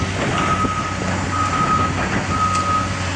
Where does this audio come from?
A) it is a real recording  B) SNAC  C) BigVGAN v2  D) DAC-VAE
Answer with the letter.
A